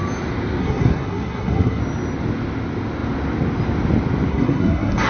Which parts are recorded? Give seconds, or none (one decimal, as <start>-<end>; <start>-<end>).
0.0-0.6; 1.8-4.3